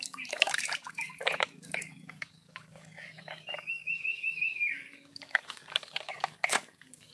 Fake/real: fake